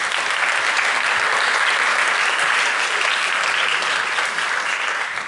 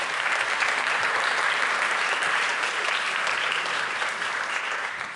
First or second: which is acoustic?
first